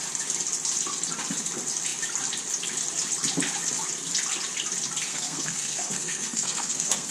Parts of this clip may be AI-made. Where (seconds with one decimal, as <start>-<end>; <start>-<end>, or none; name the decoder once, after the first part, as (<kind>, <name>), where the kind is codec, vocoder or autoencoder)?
5.1-7.1 (codec, SNAC)